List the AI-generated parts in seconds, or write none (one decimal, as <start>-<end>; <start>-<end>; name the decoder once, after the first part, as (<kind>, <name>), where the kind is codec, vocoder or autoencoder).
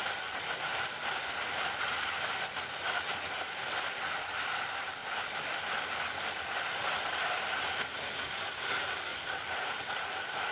0.7-1.8 (vocoder, BigVGAN v2); 9.1-9.8